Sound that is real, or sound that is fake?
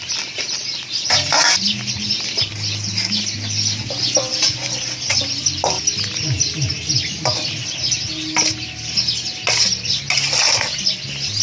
real